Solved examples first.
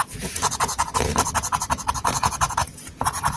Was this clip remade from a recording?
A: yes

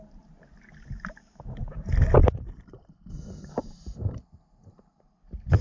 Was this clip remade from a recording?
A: no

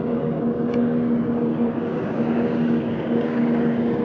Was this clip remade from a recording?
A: yes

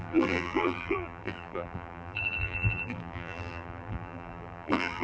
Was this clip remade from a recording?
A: yes